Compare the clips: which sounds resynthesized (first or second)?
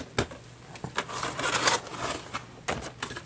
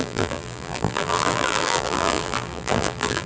second